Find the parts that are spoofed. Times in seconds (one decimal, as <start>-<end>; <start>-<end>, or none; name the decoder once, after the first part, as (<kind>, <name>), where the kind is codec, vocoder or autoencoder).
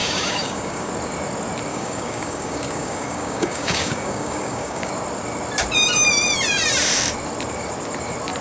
0.0-0.9 (codec, DAC); 1.7-4.9